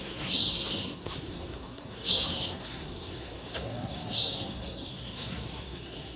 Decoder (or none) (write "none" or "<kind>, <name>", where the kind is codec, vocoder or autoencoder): codec, SNAC